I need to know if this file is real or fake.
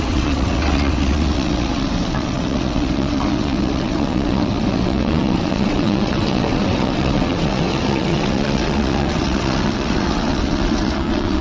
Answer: fake